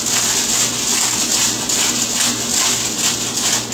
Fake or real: real